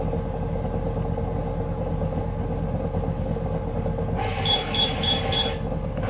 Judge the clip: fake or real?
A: real